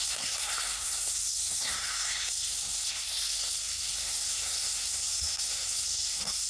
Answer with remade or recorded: remade